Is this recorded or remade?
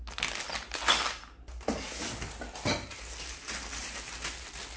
recorded